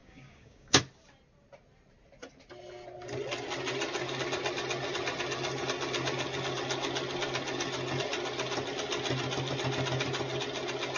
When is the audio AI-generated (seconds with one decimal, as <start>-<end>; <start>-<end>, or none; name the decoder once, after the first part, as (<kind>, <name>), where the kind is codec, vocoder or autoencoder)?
0.0-0.8 (codec, DAC)